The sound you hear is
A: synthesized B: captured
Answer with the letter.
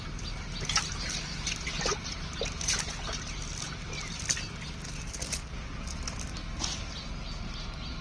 B